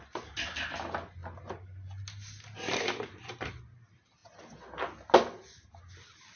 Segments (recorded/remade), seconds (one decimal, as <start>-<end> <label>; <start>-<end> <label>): 0.0-6.4 recorded